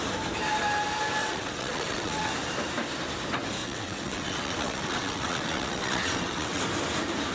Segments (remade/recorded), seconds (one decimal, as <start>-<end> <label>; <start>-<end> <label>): 0.0-1.2 recorded; 1.2-2.3 remade; 2.3-3.6 recorded; 3.6-6.6 remade; 6.6-7.3 recorded